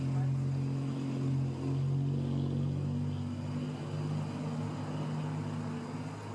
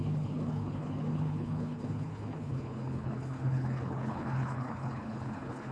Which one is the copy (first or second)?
second